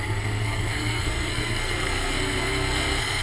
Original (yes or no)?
no